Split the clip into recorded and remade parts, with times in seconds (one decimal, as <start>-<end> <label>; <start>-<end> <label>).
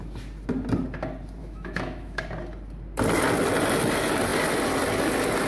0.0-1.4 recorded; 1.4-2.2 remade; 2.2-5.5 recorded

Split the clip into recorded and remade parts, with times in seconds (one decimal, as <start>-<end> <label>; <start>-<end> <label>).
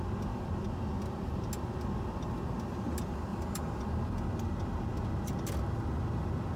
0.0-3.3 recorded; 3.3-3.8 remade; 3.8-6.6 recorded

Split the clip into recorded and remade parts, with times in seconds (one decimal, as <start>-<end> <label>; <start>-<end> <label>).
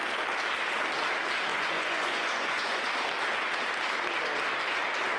0.0-1.5 recorded; 1.5-2.9 remade; 2.9-5.2 recorded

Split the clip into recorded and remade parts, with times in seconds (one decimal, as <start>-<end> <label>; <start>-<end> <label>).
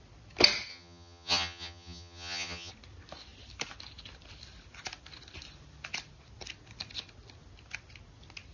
0.0-0.7 recorded; 0.7-2.7 remade; 2.7-8.5 recorded